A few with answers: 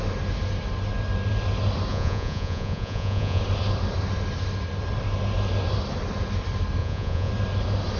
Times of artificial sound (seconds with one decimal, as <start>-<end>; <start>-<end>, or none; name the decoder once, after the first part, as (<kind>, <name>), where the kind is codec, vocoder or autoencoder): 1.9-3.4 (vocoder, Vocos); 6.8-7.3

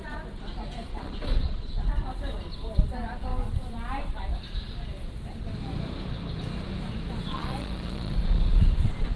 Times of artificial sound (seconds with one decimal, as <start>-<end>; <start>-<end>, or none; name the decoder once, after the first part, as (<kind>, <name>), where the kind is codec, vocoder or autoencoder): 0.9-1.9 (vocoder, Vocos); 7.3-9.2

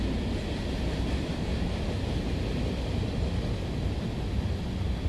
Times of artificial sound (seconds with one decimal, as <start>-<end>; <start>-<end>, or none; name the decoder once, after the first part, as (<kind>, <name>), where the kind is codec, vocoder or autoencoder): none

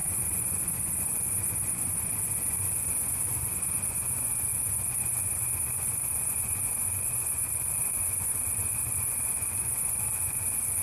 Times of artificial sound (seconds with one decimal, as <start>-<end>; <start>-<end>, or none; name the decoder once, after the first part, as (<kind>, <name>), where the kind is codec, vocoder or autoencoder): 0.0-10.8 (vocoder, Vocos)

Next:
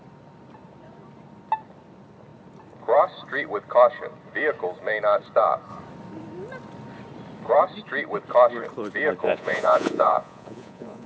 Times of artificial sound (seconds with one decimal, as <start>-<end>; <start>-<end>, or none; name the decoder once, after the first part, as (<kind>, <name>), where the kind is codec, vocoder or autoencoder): 9.2-11.1 (vocoder, Vocos)

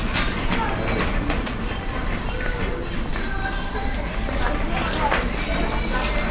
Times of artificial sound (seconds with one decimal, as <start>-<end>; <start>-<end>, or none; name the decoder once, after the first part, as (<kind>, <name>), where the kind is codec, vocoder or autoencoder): 1.1-1.6 (vocoder, Vocos)

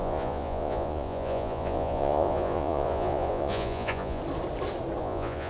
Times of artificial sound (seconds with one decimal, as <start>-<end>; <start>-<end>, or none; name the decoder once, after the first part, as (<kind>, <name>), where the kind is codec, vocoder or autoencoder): 0.0-4.2 (vocoder, Vocos); 5.0-5.5